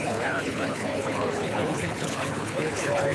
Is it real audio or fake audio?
fake